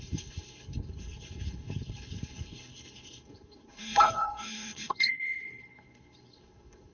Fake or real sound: fake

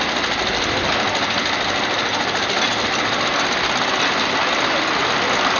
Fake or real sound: real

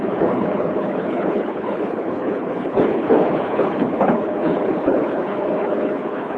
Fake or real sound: fake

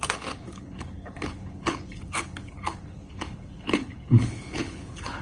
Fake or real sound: fake